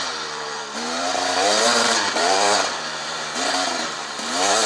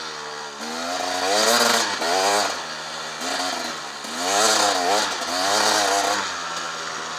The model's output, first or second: first